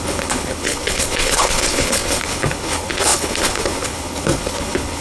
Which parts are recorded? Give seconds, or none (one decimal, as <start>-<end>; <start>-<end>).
none